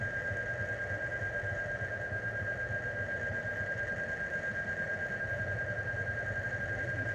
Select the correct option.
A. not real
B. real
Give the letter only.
B